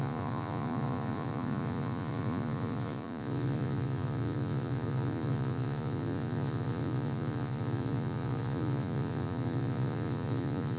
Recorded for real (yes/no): no